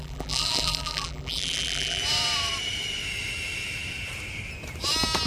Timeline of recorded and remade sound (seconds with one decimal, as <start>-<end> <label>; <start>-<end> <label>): 0.0-2.0 remade; 2.0-5.3 recorded